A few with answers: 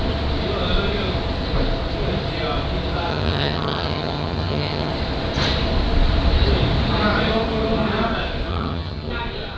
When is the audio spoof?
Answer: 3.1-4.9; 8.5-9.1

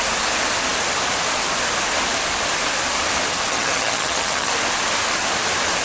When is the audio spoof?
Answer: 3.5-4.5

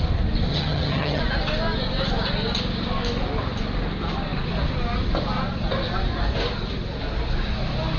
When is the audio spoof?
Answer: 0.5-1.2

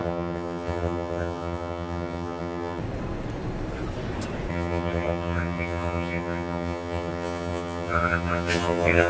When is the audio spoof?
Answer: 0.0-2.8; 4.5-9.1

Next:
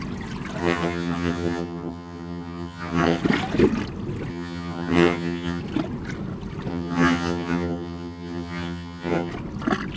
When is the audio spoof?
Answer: 0.6-3.2; 4.3-5.6; 6.7-9.3

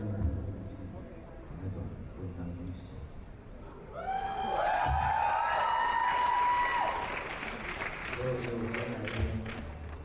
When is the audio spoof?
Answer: none